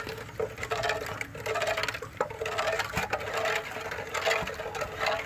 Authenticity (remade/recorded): recorded